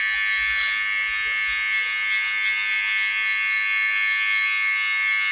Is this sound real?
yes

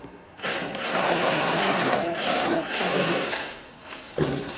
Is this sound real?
no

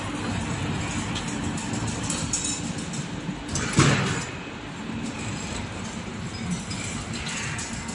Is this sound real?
yes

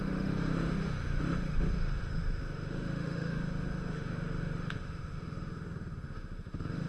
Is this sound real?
no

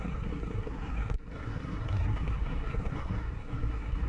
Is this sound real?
no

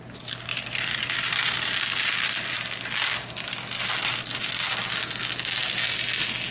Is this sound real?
yes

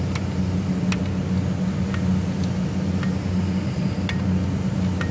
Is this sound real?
yes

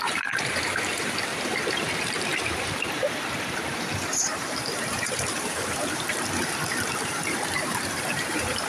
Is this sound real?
no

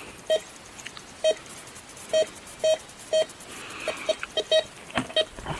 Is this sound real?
yes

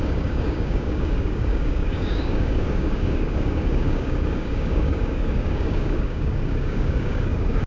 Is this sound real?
no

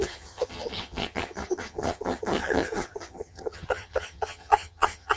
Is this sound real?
no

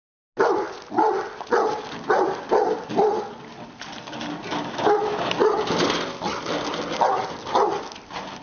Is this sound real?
yes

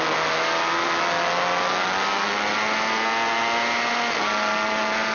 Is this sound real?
yes